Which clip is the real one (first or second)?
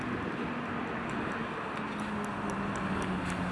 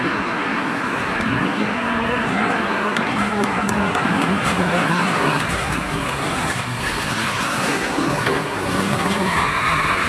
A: first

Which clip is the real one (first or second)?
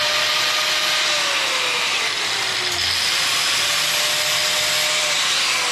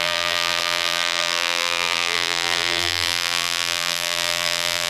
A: first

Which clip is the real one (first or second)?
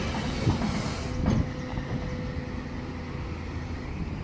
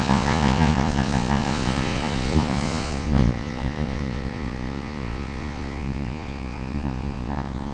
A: first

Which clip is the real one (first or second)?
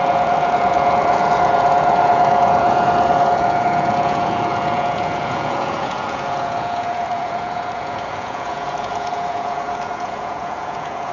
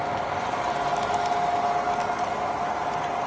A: second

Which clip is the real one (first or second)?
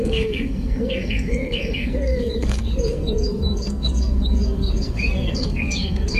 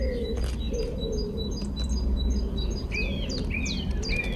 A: second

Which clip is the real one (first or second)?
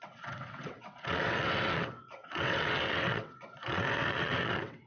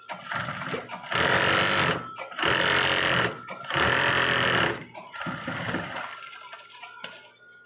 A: second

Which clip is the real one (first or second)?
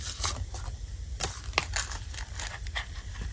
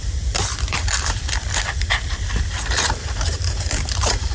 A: first